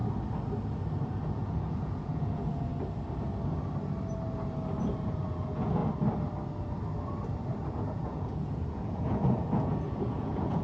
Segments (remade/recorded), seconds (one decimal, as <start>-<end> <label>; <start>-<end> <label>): 0.0-1.0 recorded; 1.0-2.7 remade; 2.7-5.1 recorded; 5.1-5.8 remade; 5.8-7.7 recorded; 7.7-10.6 remade